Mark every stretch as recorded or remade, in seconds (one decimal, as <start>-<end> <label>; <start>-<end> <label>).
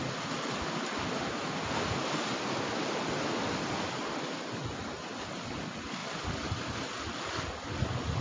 0.0-8.2 recorded